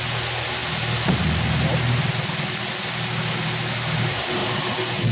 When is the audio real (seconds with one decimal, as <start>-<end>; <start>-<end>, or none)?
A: 0.0-5.1